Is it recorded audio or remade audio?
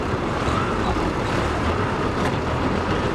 remade